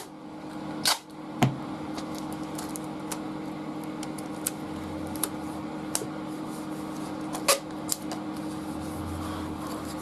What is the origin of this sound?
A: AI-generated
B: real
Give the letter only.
B